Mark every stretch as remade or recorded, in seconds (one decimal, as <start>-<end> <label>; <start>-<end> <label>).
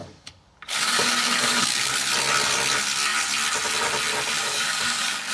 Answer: 0.0-1.9 remade; 1.9-4.4 recorded; 4.4-5.3 remade